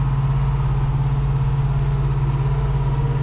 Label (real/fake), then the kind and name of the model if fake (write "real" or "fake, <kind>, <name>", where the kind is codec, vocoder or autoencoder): real